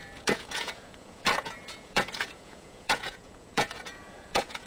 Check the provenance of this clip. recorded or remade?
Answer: remade